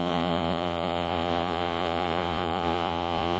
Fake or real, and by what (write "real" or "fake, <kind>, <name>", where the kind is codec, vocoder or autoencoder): fake, vocoder, Vocos